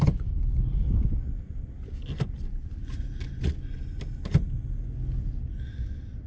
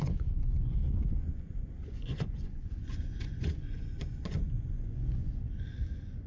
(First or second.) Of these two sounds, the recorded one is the first